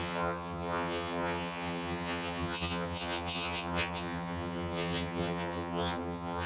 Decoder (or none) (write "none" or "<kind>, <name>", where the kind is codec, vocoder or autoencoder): vocoder, HiFi-GAN